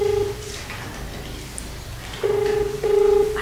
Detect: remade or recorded recorded